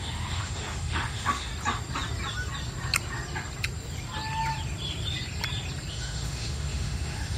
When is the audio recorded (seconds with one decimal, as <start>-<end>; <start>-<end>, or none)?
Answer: 1.5-5.9